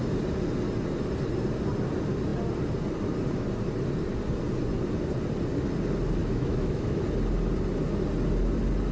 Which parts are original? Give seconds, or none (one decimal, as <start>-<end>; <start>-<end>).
0.0-6.2; 7.0-8.9